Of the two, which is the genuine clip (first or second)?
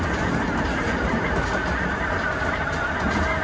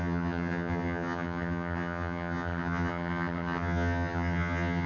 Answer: first